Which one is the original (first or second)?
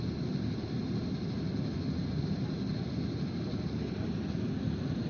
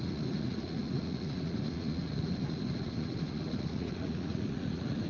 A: first